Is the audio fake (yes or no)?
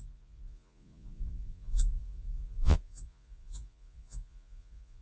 yes